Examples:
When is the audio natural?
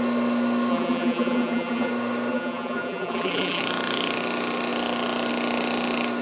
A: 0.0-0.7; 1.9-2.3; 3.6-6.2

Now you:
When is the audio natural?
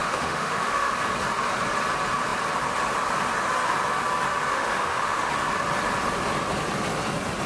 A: 0.9-4.5; 5.3-7.5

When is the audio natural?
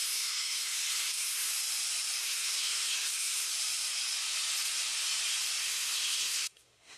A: 1.5-2.2; 3.5-5.6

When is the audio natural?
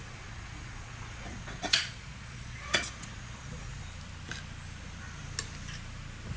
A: 3.8-6.4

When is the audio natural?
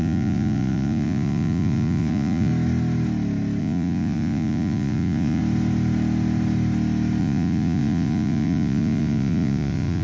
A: 2.5-3.6; 5.4-7.2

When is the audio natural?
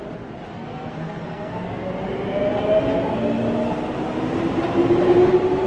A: 0.0-0.5; 1.6-5.7